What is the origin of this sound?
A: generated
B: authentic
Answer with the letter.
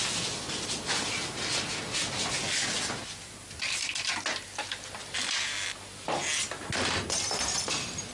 B